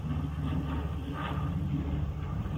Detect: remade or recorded recorded